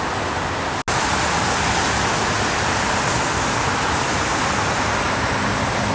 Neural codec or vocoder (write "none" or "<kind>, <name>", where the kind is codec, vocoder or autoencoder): none